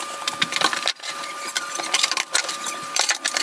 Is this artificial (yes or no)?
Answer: yes